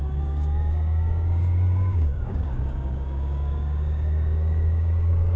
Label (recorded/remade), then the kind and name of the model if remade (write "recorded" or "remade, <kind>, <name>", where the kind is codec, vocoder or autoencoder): remade, codec, DAC